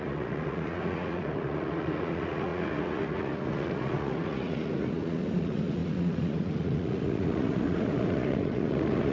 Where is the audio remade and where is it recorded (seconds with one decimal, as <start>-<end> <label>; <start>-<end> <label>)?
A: 0.0-9.1 remade